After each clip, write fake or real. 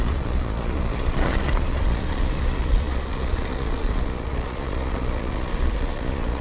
fake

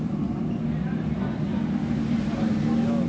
real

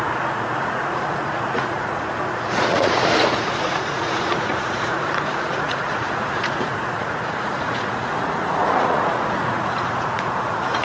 fake